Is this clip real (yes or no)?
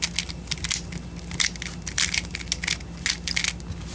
yes